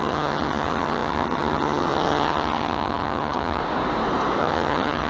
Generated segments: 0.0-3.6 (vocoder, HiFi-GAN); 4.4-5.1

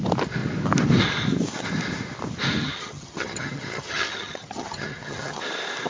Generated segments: 2.6-5.4 (vocoder, HiFi-GAN)

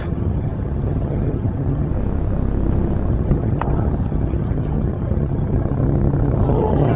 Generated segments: 0.0-1.9 (vocoder, HiFi-GAN); 3.1-7.0

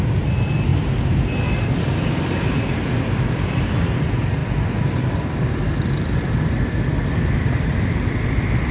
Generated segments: none

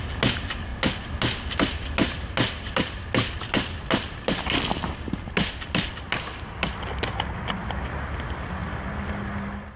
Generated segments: none

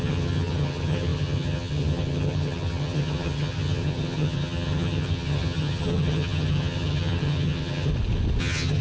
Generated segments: 0.0-7.9 (vocoder, HiFi-GAN); 8.4-8.8

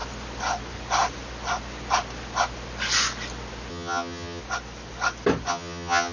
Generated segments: 3.7-4.4 (vocoder, HiFi-GAN); 5.5-6.1